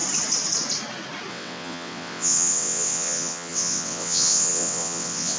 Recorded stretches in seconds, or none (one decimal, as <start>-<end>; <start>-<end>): 0.0-1.3